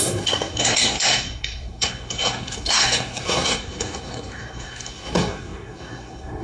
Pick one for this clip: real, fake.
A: fake